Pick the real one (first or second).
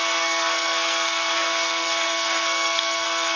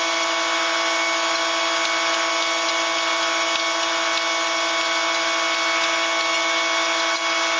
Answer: second